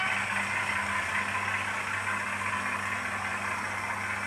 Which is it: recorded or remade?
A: recorded